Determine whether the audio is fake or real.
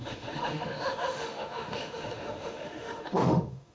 fake